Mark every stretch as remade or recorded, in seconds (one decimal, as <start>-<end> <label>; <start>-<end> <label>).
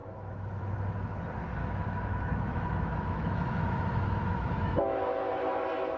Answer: 0.0-0.6 remade; 0.6-1.6 recorded; 1.6-5.2 remade; 5.2-6.0 recorded